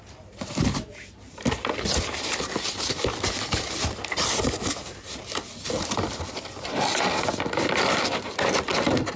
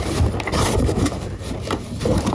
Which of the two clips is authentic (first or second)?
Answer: first